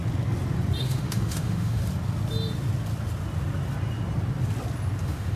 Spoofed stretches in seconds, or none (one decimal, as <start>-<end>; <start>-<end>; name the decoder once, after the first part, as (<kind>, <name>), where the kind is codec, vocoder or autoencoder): 0.8-1.8 (autoencoder, DAC-VAE); 5.0-5.4